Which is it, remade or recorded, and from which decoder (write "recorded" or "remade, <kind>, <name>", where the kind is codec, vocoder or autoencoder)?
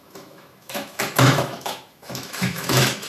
remade, autoencoder, DAC-VAE